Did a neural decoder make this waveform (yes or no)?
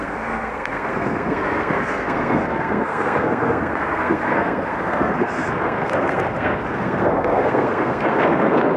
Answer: yes